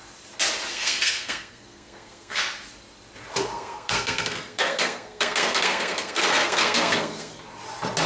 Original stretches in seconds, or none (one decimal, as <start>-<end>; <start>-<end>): 0.0-0.7; 2.4-3.4; 7.3-8.1